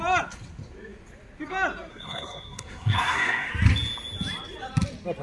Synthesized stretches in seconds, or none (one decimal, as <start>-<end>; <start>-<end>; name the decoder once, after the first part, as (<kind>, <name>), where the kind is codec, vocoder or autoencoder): 1.9-3.5 (codec, SNAC)

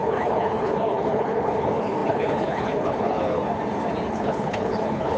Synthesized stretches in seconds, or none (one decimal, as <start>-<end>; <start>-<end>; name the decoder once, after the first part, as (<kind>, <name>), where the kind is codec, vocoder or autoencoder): 0.0-3.4 (codec, HILCodec); 4.1-5.2

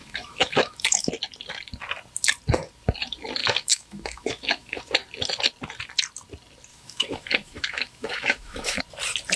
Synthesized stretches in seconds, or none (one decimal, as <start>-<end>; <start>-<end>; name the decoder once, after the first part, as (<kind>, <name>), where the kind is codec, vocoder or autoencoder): 0.0-1.1 (autoencoder, DAC-VAE); 3.4-4.8; 6.7-8.8